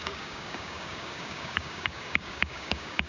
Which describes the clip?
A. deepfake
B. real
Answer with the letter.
A